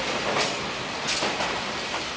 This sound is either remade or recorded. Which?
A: recorded